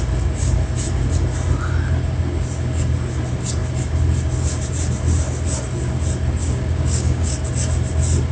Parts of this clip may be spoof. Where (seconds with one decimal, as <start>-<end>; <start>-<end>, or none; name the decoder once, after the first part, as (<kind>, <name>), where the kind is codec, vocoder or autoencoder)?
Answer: 6.4-7.3 (codec, DAC)